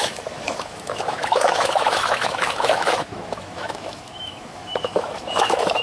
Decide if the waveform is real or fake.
fake